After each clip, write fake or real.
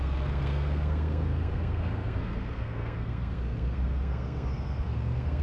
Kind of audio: fake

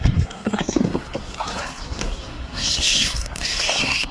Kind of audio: fake